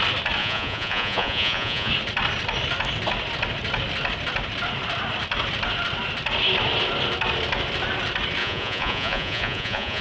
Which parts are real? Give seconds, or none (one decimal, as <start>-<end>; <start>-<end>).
0.0-0.4; 1.9-8.4